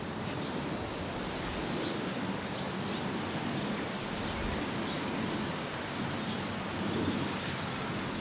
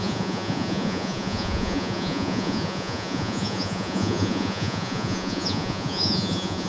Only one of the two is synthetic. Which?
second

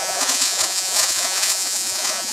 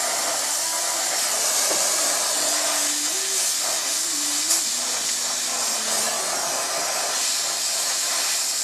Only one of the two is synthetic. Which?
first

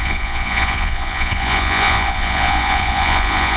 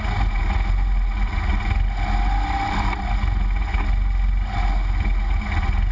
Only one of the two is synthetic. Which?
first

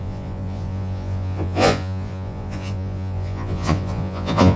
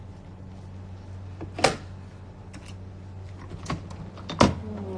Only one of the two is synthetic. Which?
first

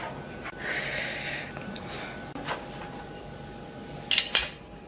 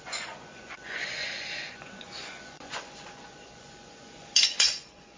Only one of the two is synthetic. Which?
second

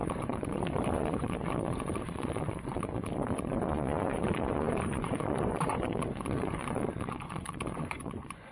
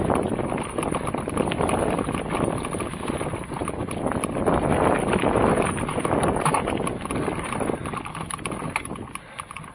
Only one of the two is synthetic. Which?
first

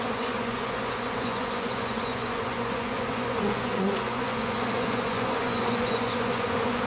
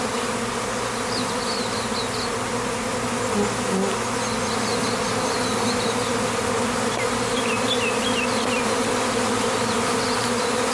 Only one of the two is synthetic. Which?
first